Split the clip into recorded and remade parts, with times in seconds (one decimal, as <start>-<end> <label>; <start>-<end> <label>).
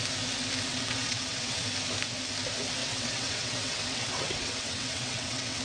0.0-0.7 recorded; 0.7-1.6 remade; 1.6-2.8 recorded; 2.8-5.6 remade